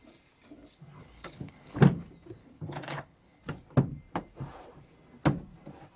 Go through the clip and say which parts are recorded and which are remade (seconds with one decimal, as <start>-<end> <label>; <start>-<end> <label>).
0.0-1.0 recorded; 1.0-1.8 remade; 1.8-2.4 recorded; 2.4-3.4 remade; 3.4-6.0 recorded